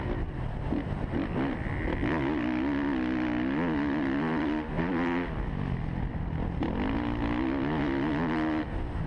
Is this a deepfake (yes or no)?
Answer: no